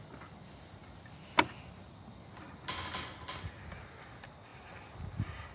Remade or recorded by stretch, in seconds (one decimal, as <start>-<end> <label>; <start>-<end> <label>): 0.0-5.5 recorded